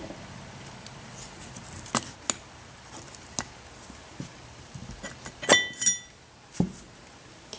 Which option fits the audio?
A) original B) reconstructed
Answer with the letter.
A